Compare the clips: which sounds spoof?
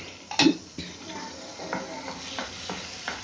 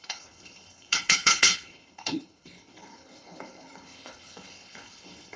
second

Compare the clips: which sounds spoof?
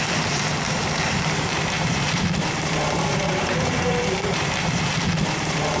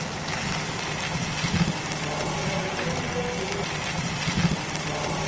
first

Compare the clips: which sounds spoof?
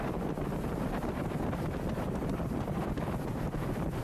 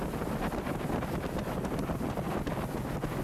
first